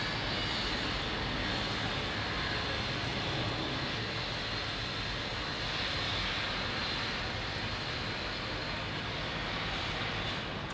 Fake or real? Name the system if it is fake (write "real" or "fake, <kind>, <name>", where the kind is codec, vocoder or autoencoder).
real